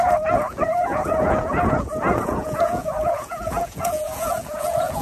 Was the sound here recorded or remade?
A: remade